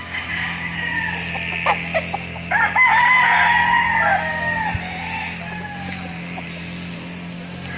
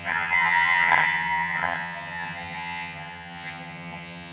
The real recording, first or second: first